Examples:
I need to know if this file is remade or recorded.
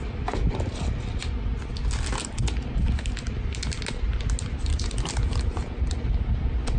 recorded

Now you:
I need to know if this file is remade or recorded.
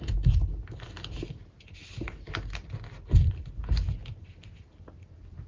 recorded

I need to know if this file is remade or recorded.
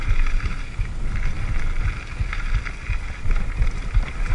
recorded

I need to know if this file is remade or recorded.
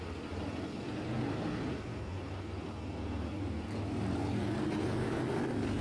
recorded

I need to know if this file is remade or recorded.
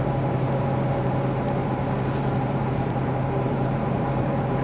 remade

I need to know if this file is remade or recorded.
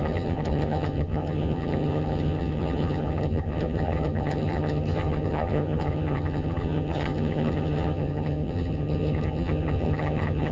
remade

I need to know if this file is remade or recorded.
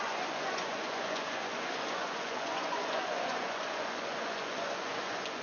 remade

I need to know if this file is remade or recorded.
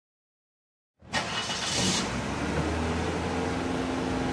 recorded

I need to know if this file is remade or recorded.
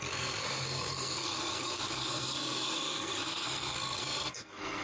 remade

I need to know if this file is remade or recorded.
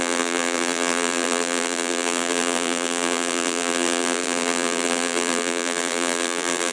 remade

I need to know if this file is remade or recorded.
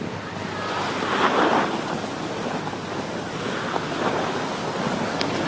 recorded